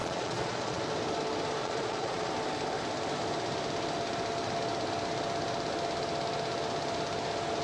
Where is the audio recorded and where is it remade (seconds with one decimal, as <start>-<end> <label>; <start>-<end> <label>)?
0.0-0.8 remade; 0.8-1.6 recorded; 1.6-2.3 remade; 2.3-7.6 recorded